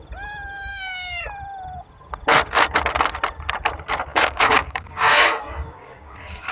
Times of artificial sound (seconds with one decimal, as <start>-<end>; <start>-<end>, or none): 0.7-1.2; 4.1-6.5